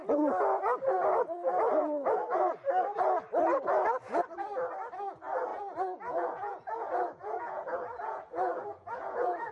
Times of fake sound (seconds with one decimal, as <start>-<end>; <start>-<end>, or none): 5.5-9.5

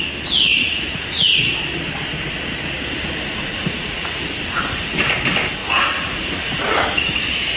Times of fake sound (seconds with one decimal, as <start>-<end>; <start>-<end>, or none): 0.5-1.5; 3.4-4.8; 5.6-6.6

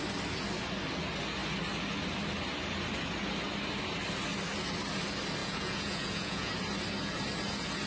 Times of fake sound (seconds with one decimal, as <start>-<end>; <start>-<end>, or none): 5.4-6.5

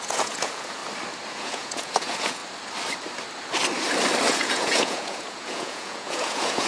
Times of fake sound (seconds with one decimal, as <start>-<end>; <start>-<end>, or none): 0.0-0.8; 1.3-2.4; 4.3-6.7

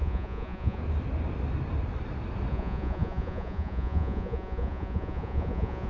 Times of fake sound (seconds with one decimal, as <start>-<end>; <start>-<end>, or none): 0.0-0.8; 2.5-5.9

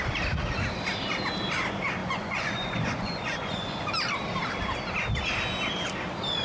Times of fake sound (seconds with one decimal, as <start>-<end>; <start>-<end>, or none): 2.0-3.9

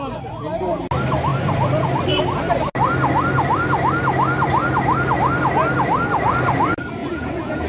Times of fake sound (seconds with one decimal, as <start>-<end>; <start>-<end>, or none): 7.0-7.7